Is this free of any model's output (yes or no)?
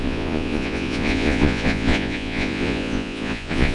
no